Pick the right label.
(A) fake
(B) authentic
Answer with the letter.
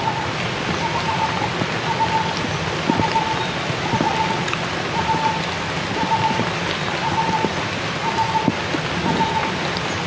B